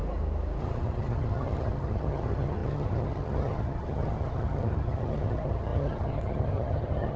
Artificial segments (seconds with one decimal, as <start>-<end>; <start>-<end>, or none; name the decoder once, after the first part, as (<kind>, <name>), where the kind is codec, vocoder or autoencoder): 0.6-7.2 (vocoder, HiFi-GAN)